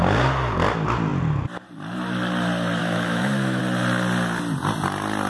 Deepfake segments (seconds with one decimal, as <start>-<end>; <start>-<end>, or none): 2.8-3.6